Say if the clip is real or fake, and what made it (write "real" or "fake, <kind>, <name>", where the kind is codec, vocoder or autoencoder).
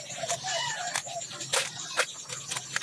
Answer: real